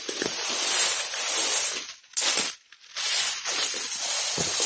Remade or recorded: recorded